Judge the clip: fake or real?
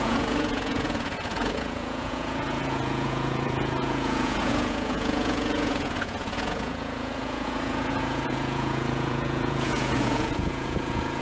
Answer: fake